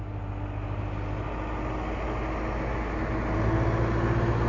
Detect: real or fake real